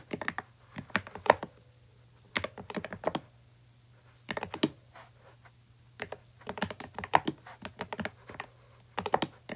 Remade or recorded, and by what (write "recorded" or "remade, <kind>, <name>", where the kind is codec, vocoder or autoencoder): recorded